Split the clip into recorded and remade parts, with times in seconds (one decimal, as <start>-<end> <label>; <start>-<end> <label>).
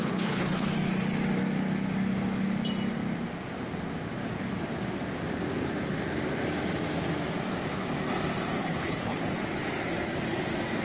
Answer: 0.0-0.7 remade; 0.7-8.6 recorded; 8.6-9.3 remade; 9.3-10.8 recorded